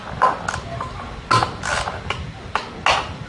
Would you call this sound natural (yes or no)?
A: yes